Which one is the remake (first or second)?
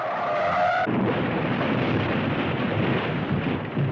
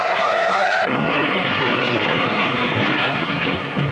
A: second